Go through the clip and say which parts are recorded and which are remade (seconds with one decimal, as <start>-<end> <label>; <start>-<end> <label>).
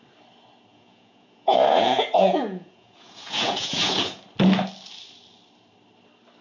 0.0-0.7 recorded; 0.7-4.2 remade; 4.2-6.4 recorded